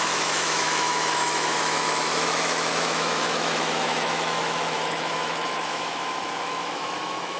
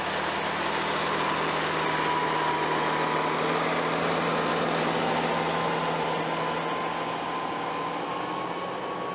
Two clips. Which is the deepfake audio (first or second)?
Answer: first